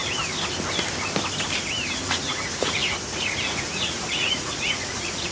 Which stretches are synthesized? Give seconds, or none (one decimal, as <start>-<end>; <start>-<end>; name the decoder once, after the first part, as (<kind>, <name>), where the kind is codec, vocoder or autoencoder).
2.1-5.3 (vocoder, Vocos)